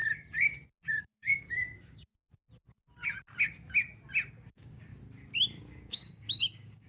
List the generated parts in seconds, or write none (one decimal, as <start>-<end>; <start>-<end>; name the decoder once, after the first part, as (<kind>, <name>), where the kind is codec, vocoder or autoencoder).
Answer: 1.0-2.1 (codec, DAC); 4.3-4.9; 5.6-6.9